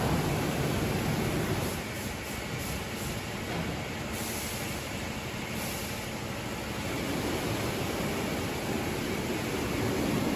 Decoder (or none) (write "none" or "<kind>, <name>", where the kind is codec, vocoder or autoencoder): none